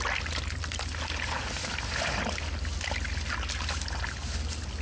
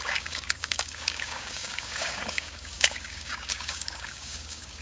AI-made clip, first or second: second